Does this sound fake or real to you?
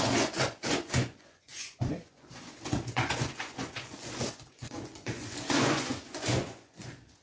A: fake